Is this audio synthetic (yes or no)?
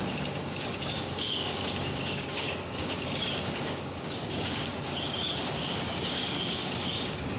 yes